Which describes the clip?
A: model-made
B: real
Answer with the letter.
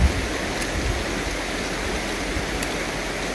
B